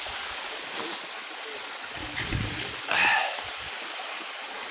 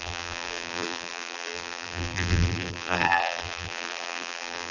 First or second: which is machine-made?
second